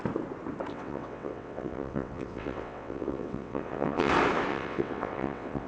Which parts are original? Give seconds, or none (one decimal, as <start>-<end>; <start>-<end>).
0.0-0.7; 4.1-4.5